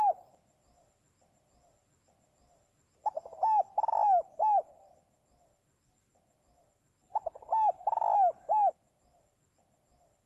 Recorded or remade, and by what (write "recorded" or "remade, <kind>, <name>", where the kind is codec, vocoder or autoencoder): recorded